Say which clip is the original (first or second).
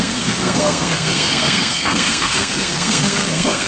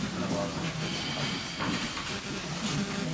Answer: second